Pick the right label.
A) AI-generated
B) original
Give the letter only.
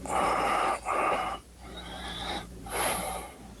A